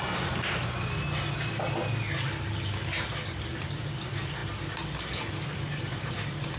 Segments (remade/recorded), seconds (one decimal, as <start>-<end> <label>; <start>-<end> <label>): 0.0-6.6 recorded